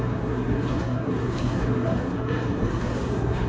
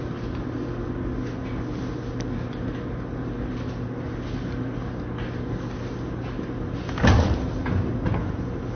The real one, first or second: second